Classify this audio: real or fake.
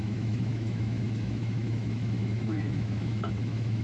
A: fake